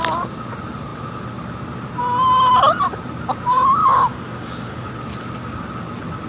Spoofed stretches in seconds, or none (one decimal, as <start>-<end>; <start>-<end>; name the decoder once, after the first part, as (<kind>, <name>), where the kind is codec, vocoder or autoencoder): 3.8-4.9 (codec, DAC)